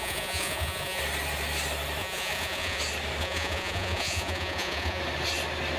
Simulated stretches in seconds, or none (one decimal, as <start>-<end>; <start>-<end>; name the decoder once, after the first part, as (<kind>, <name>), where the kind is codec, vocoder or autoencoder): 0.0-1.0 (vocoder, Vocos); 2.0-2.8; 3.2-5.0